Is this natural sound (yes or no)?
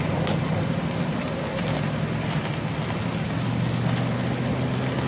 yes